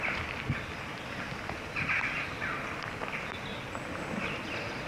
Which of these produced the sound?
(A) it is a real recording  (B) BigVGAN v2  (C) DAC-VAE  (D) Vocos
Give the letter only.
A